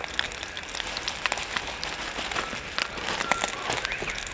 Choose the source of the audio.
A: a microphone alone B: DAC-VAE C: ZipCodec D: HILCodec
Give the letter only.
A